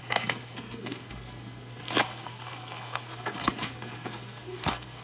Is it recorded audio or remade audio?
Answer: remade